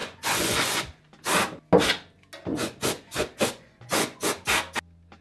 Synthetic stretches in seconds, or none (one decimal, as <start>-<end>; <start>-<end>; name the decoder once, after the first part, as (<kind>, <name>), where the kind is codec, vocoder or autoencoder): 0.0-1.0 (vocoder, Vocos); 2.5-4.3